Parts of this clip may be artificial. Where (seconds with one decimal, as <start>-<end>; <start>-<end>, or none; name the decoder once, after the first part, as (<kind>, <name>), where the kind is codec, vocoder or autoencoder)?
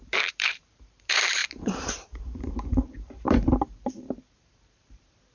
0.0-5.3 (vocoder, BigVGAN v2)